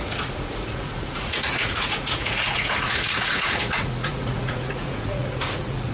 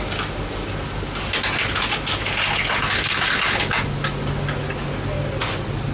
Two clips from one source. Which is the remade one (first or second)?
first